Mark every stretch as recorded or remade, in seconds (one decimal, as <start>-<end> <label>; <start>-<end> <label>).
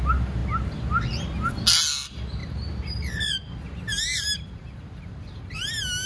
0.0-2.4 recorded; 2.4-3.2 remade; 3.2-3.9 recorded; 3.9-5.4 remade; 5.4-6.1 recorded